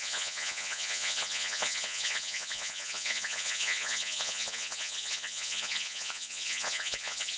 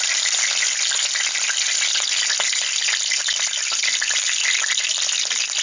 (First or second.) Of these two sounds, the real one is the second